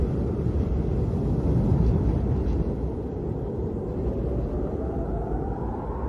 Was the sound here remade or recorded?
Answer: recorded